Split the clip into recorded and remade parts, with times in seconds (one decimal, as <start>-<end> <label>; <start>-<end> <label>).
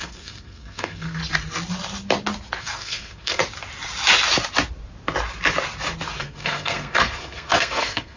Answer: 0.0-1.2 remade; 1.2-2.6 recorded; 2.6-3.4 remade; 3.4-6.2 recorded; 6.2-8.2 remade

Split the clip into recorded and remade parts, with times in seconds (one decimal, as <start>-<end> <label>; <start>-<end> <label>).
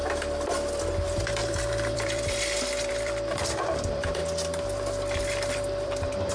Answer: 0.0-4.2 remade; 4.2-5.5 recorded; 5.5-6.3 remade